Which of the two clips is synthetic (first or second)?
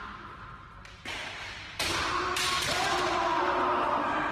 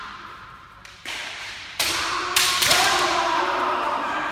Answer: second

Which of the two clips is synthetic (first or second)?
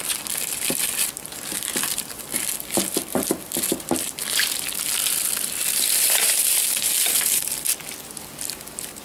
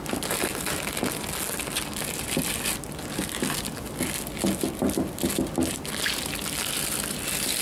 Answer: first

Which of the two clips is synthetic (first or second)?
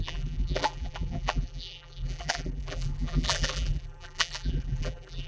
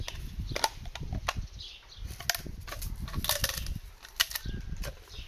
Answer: first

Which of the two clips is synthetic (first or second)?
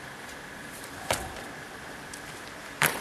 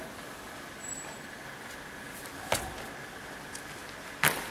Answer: first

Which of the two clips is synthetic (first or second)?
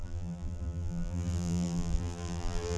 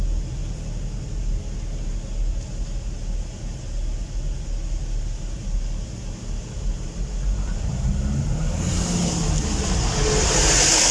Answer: first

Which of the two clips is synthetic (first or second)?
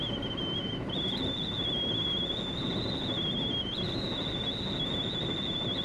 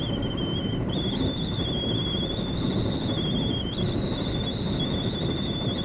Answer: second